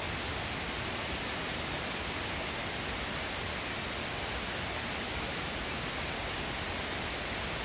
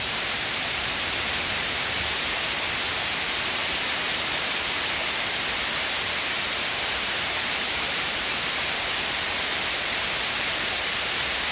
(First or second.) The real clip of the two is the first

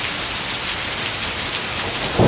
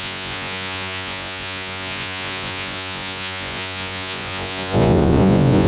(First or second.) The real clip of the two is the first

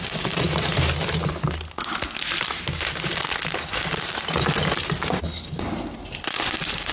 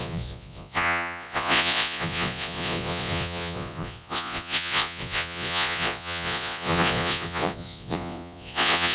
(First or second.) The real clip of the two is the first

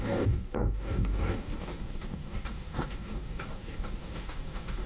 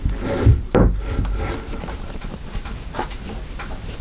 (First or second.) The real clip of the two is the second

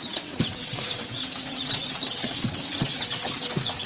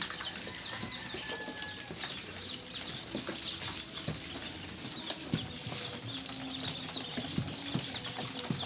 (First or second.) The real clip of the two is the second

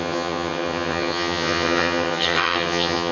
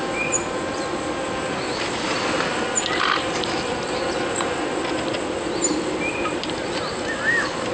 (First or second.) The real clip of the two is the second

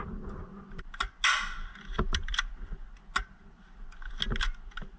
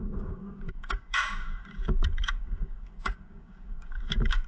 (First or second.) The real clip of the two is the first